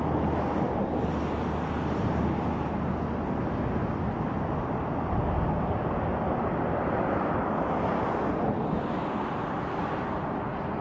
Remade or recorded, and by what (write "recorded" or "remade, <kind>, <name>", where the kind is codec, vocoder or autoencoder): recorded